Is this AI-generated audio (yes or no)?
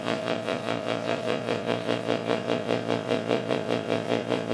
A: yes